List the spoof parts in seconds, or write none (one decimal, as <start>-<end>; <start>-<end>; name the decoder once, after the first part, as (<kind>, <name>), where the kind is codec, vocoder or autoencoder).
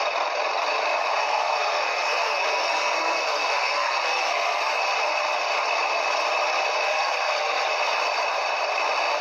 1.2-4.6 (codec, SNAC); 6.9-7.7